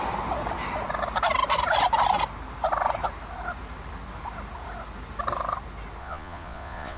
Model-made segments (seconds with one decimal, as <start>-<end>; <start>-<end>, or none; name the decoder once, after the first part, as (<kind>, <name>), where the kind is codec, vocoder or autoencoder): 6.0-7.0 (vocoder, Vocos)